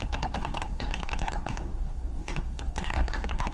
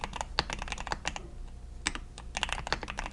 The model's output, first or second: first